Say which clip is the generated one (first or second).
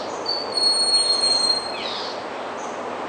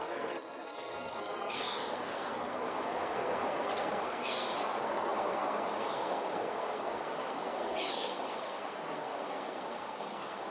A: second